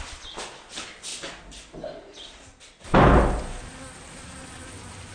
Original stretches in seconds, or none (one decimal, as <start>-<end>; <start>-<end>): 0.0-5.1